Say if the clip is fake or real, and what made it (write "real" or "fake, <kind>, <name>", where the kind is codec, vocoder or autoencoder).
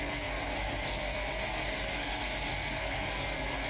fake, codec, SNAC